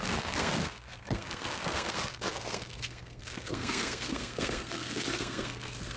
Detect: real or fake fake